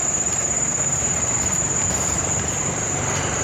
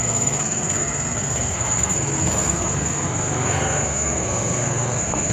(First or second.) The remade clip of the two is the second